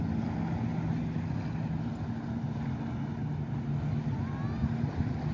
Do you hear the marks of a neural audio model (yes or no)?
no